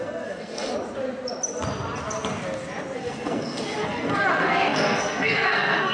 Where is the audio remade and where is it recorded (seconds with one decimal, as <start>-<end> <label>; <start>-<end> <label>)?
0.0-0.7 remade; 0.7-3.0 recorded; 3.0-5.9 remade